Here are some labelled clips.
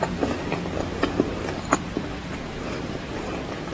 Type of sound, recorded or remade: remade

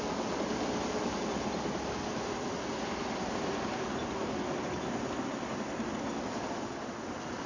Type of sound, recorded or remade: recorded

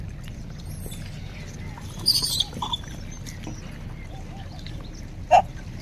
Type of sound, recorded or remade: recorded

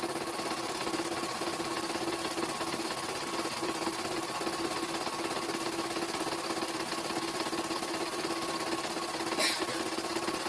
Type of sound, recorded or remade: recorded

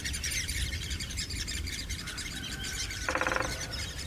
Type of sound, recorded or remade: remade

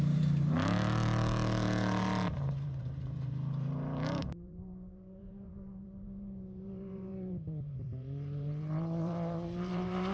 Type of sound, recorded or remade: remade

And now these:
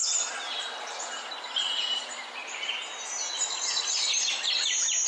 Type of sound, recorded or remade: recorded